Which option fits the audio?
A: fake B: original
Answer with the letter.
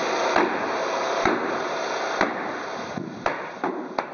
A